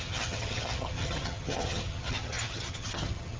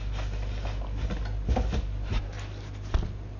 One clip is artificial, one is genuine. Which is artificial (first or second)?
first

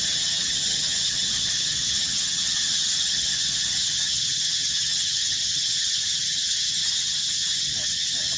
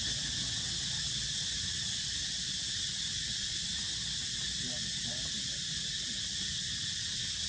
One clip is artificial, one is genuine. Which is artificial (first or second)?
first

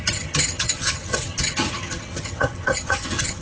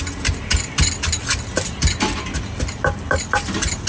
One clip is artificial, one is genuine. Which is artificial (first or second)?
first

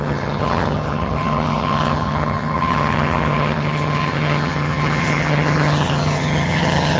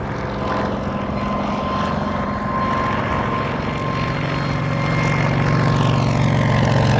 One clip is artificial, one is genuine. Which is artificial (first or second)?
first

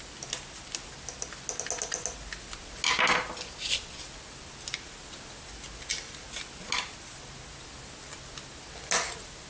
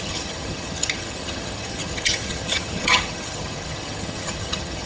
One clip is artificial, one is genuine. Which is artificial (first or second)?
second